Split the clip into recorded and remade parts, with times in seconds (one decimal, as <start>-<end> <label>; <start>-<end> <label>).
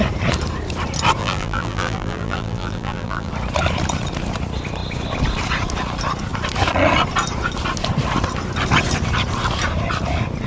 0.0-1.2 recorded; 1.2-3.3 remade; 3.3-10.5 recorded